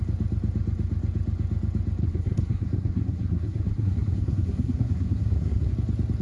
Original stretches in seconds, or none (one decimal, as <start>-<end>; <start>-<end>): 0.0-2.0; 5.7-6.2